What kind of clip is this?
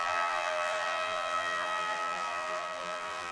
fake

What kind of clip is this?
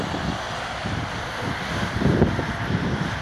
fake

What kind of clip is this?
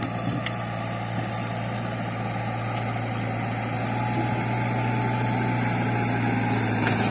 real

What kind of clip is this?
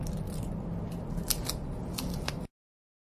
real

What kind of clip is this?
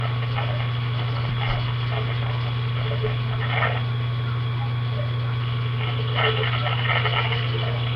real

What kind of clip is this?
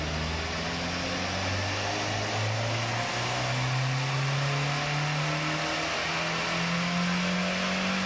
real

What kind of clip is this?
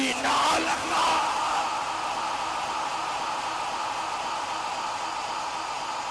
real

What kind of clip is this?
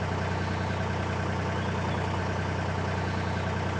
real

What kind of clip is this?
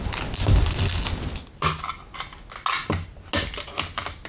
real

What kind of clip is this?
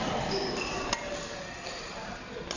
real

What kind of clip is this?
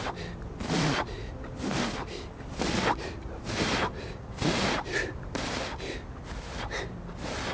fake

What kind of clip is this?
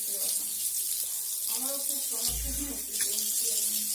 real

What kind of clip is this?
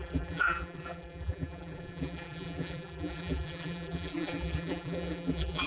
fake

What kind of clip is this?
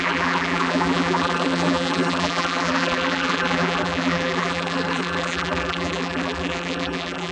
fake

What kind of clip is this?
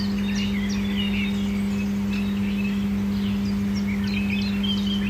real